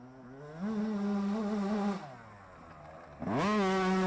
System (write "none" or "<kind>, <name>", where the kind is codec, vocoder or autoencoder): none